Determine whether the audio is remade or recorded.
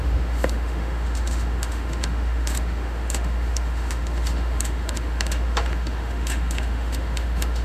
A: remade